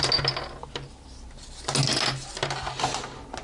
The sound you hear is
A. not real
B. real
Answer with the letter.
B